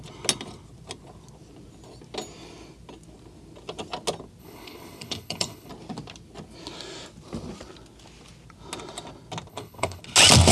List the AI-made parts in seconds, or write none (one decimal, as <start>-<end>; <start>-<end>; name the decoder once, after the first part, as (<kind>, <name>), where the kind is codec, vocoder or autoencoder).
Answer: 4.4-5.7 (codec, HILCodec); 9.5-10.0